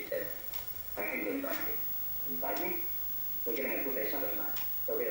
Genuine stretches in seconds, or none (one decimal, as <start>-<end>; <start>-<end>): 1.6-5.1